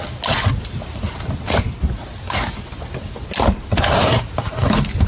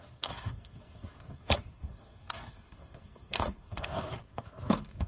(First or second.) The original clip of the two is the first